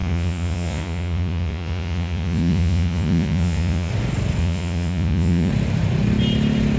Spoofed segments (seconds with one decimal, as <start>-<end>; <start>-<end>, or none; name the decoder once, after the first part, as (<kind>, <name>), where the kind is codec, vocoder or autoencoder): 0.0-3.9 (vocoder, Vocos); 4.4-5.5